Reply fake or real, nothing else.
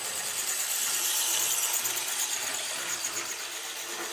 fake